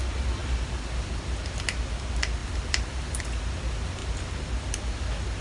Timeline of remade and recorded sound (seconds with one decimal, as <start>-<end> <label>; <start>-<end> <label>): 0.0-2.4 recorded; 2.4-3.2 remade; 3.2-5.4 recorded